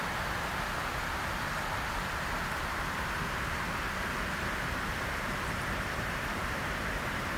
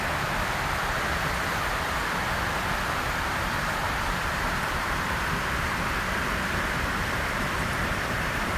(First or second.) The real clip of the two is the first